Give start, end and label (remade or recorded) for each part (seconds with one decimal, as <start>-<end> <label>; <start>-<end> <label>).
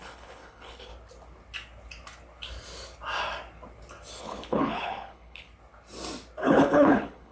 0.0-0.9 remade; 0.9-4.2 recorded; 4.2-5.5 remade; 5.5-6.4 recorded; 6.4-7.3 remade